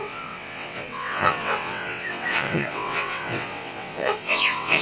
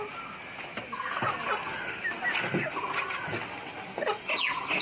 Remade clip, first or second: first